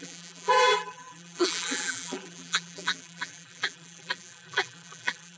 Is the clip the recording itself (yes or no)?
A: no